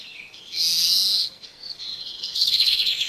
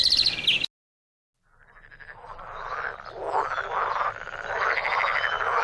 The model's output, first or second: first